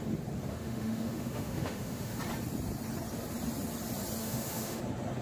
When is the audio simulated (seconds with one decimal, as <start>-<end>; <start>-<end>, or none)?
0.5-2.2; 4.2-4.8

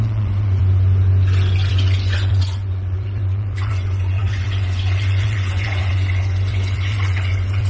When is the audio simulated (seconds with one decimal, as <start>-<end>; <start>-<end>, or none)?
0.0-0.6; 1.7-7.7